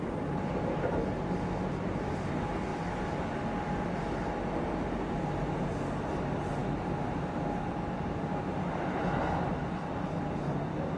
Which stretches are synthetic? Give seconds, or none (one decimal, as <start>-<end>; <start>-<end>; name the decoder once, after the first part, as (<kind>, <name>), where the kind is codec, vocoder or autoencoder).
none